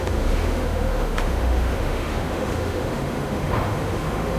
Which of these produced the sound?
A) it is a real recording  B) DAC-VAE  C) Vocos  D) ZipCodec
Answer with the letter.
B